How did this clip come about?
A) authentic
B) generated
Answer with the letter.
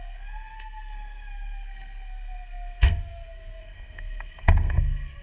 B